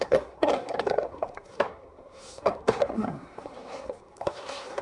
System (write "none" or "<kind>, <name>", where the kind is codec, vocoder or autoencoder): codec, SNAC